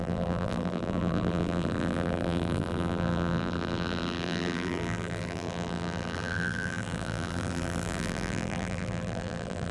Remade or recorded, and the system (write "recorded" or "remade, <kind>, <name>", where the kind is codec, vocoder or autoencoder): remade, vocoder, BigVGAN v2